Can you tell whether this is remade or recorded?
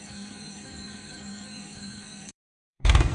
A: remade